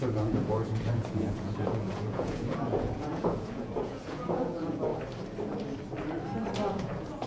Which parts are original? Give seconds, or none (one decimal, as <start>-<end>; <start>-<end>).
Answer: 4.9-6.7